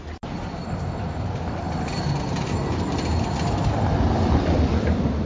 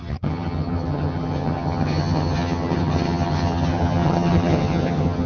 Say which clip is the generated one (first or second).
second